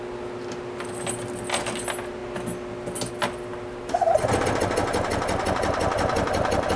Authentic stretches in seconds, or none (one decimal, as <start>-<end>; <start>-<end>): 0.0-6.8